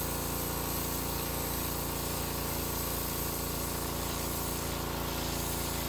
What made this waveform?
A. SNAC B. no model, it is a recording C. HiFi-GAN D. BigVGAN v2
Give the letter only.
B